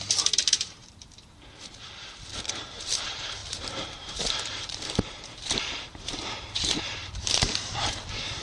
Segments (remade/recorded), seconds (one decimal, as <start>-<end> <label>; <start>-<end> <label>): 0.0-8.4 remade